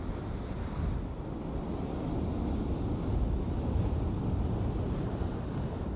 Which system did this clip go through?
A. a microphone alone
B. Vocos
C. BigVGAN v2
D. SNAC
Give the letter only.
A